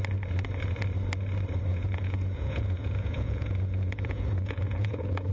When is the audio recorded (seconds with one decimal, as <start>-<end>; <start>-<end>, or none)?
0.0-1.7